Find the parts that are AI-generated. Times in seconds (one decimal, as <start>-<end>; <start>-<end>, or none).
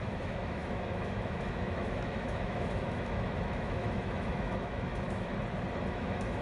0.0-5.3; 5.9-6.4